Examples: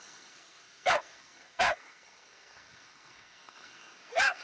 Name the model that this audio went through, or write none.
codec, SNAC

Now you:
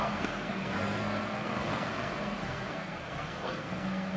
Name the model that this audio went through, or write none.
codec, SNAC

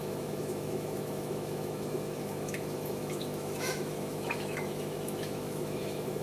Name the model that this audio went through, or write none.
autoencoder, DAC-VAE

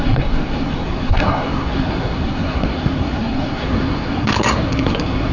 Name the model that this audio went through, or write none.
codec, SNAC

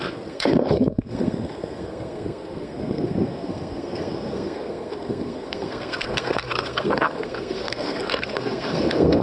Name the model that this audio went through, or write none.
codec, SNAC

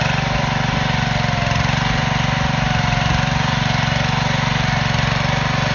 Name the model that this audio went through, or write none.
none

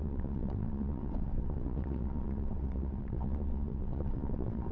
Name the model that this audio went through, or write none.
vocoder, WaveNeXt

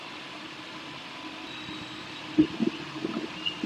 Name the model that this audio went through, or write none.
none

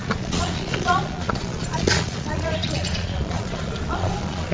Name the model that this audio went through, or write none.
vocoder, Vocos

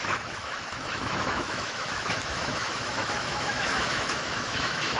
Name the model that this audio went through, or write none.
autoencoder, DAC-VAE